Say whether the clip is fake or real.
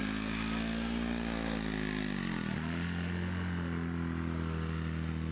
real